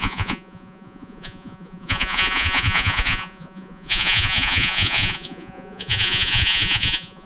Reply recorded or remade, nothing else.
remade